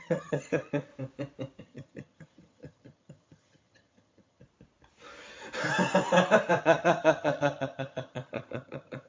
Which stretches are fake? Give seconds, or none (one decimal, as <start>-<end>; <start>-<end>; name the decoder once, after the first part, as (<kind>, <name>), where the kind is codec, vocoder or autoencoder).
0.0-0.9 (vocoder, HiFi-GAN); 1.6-4.4; 6.6-9.1